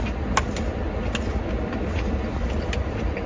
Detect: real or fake real